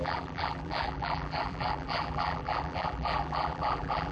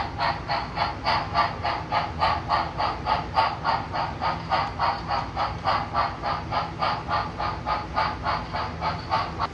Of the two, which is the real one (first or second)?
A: second